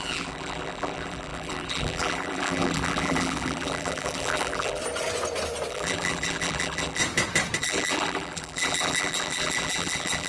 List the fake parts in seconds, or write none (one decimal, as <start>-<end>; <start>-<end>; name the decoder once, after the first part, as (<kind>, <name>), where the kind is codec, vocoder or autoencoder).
0.0-4.8 (vocoder, BigVGAN v2); 5.7-7.0; 7.6-10.3